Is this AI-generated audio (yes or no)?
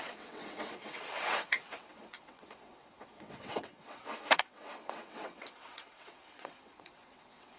yes